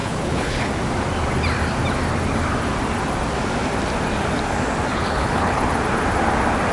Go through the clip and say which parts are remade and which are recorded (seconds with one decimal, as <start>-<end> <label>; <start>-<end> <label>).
0.0-0.7 remade; 0.7-4.9 recorded; 4.9-5.6 remade; 5.6-6.7 recorded